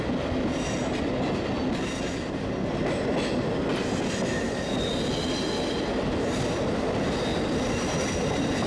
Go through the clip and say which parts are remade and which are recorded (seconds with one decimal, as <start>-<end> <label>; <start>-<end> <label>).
0.0-7.3 recorded; 7.3-8.2 remade; 8.2-8.7 recorded